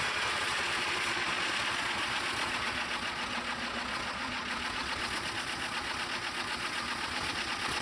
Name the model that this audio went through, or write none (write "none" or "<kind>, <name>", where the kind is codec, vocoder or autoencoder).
vocoder, Vocos